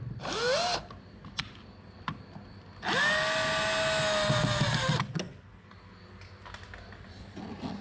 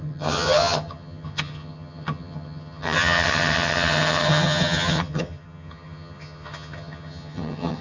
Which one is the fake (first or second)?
second